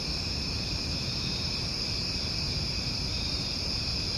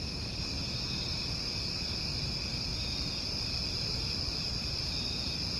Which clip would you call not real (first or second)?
first